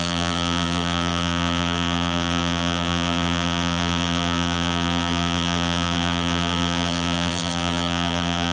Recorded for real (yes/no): no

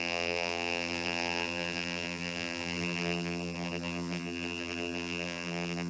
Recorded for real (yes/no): no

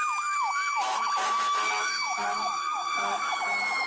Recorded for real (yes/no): no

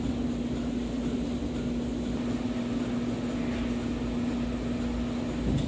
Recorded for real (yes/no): yes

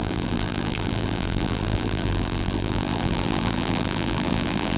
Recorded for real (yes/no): no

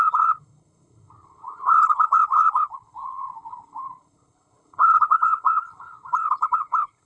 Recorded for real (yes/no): no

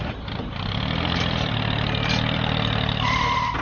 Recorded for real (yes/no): yes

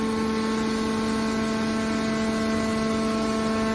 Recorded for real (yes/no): yes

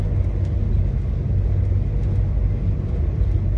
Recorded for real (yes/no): yes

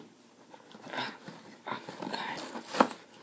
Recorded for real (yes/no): yes